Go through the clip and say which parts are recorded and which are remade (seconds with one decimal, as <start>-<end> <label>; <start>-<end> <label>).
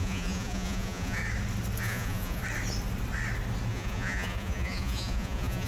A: 0.0-1.2 remade; 1.2-1.8 recorded; 1.8-2.4 remade; 2.4-3.7 recorded; 3.7-5.7 remade